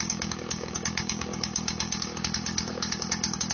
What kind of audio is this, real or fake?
fake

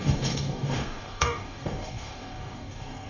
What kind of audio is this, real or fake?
fake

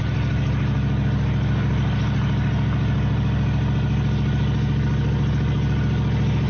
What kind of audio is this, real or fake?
real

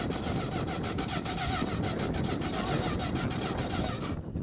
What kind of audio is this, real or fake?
real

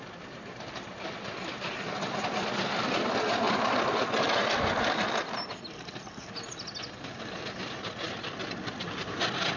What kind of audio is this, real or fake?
real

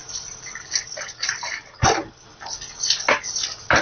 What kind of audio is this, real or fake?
real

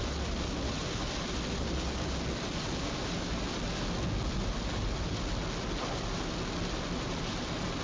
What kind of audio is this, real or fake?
real